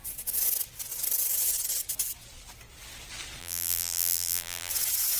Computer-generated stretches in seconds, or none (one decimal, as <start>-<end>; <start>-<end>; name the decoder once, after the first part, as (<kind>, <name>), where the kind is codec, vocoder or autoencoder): 3.4-4.7 (vocoder, BigVGAN v2)